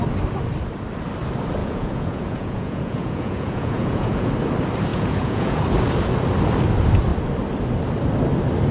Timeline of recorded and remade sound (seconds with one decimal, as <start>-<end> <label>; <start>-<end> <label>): 0.0-1.6 recorded; 1.6-4.3 remade; 4.3-4.9 recorded; 4.9-5.6 remade; 5.6-8.7 recorded